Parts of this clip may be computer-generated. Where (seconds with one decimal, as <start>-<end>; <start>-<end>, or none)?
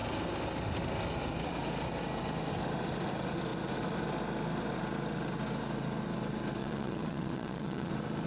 6.6-7.9